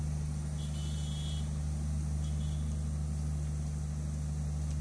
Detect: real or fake real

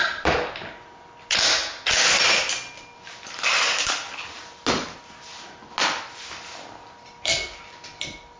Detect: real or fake real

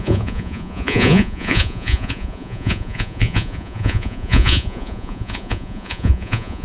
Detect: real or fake fake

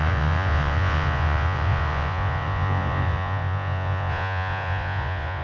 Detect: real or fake fake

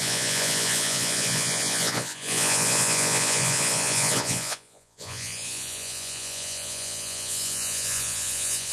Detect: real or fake fake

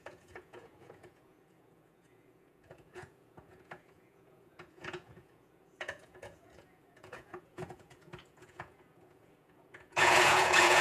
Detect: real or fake fake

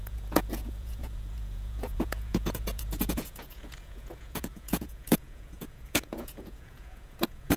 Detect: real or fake fake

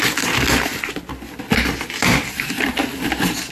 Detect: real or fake real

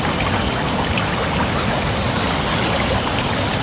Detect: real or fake real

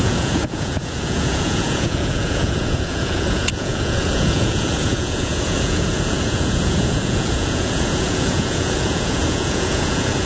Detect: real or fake fake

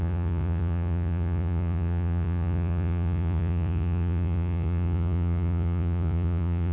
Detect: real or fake fake